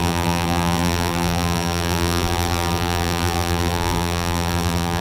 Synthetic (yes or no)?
yes